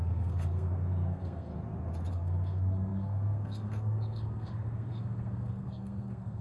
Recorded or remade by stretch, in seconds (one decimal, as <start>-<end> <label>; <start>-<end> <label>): 0.0-1.5 remade; 1.5-2.1 recorded; 2.1-6.4 remade